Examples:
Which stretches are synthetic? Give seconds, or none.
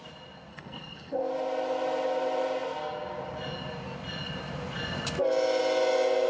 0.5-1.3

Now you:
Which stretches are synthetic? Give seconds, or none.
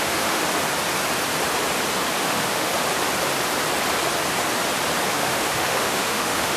0.0-0.4; 2.2-2.7; 5.1-6.6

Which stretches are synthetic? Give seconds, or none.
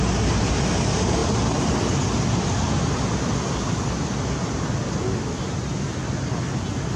none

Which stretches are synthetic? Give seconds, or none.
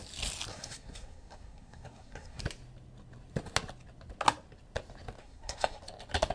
0.5-2.4; 5.2-5.8